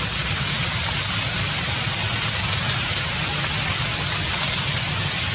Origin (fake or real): real